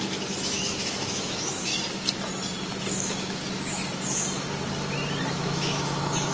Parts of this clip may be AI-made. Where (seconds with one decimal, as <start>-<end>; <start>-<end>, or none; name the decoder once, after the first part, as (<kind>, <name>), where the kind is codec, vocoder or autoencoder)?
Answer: 0.0-1.7 (autoencoder, DAC-VAE); 2.8-3.4; 5.3-6.3